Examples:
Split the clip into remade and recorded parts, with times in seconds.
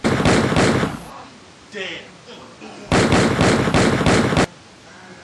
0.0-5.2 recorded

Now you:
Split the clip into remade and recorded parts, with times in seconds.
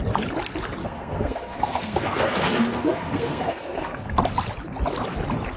0.0-0.8 recorded; 0.8-4.2 remade; 4.2-5.6 recorded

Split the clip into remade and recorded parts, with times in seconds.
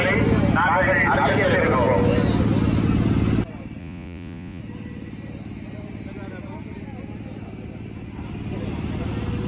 0.0-3.8 recorded; 3.8-4.6 remade; 4.6-9.5 recorded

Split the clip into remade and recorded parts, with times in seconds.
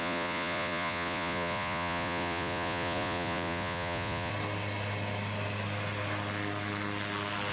0.0-4.3 remade; 4.3-7.5 recorded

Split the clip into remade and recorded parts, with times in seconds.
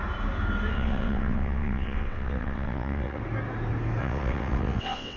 0.0-0.7 recorded; 0.7-3.2 remade; 3.2-4.0 recorded; 4.0-5.2 remade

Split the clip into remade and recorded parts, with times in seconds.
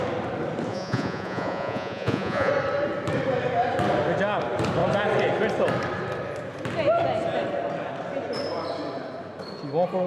0.0-0.7 recorded; 0.7-2.5 remade; 2.5-10.1 recorded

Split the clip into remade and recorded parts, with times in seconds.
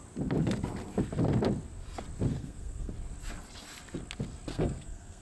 0.0-2.3 recorded; 2.3-2.9 remade; 2.9-4.5 recorded; 4.5-5.2 remade